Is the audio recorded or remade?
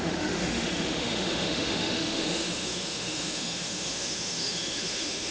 remade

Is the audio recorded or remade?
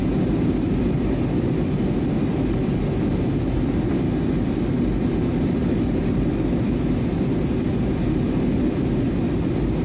recorded